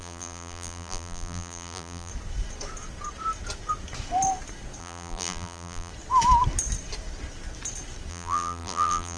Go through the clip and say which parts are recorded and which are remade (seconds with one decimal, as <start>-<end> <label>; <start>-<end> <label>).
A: 0.0-2.1 remade; 2.1-4.8 recorded; 4.8-5.9 remade; 5.9-8.1 recorded; 8.1-9.2 remade